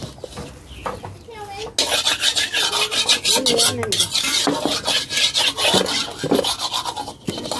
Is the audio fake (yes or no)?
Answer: no